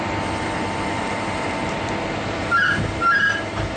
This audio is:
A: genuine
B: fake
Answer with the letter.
B